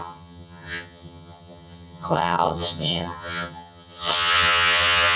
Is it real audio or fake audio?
fake